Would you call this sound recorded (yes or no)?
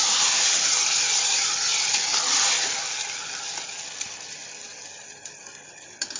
yes